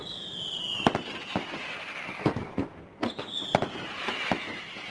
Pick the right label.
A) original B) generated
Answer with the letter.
A